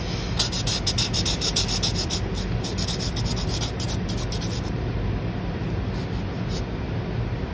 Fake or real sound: real